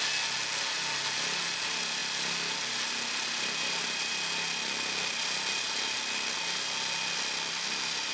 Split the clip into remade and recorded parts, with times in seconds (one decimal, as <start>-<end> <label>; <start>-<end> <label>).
0.0-8.1 recorded